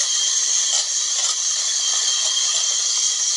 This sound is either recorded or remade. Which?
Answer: remade